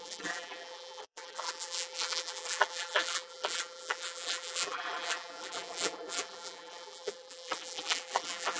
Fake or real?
fake